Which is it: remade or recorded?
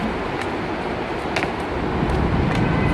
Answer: recorded